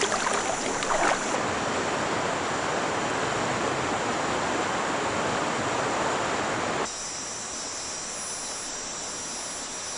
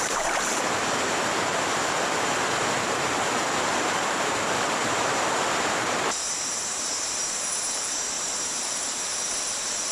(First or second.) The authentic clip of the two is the first